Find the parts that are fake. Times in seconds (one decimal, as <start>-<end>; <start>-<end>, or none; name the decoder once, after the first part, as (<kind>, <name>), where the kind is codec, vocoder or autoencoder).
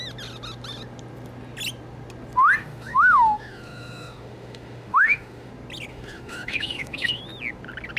2.6-5.5 (autoencoder, DAC-VAE); 5.9-7.2